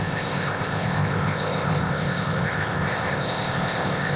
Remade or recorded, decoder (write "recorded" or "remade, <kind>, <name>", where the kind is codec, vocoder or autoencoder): remade, codec, ZipCodec